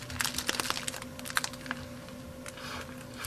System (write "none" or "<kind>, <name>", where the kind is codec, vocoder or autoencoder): none